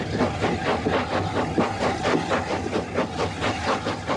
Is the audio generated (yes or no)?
no